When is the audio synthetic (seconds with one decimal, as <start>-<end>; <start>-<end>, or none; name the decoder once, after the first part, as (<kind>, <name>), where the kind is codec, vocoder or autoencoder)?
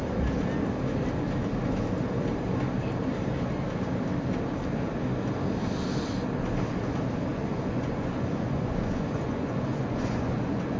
7.3-10.8 (vocoder, Vocos)